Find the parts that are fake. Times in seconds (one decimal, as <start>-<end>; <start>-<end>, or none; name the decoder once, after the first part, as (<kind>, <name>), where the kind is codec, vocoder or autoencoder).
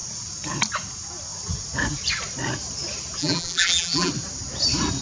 3.2-4.1 (vocoder, BigVGAN v2)